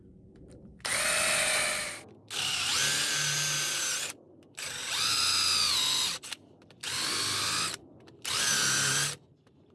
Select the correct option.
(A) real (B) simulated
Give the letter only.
A